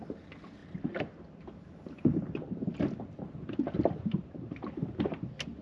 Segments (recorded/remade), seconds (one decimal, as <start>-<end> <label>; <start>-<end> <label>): 0.0-0.6 recorded; 0.6-4.0 remade; 4.0-5.6 recorded